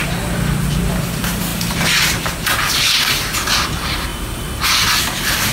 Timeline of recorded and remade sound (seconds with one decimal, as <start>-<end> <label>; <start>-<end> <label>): 0.0-5.5 recorded